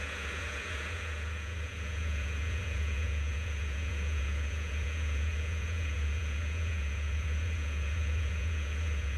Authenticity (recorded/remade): remade